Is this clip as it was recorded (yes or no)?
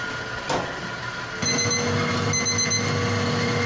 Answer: yes